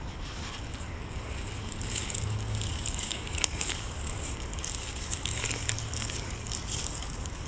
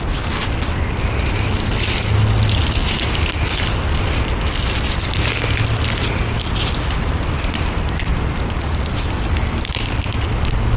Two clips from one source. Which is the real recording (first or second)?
second